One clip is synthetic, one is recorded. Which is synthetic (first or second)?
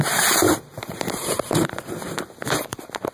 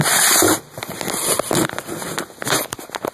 first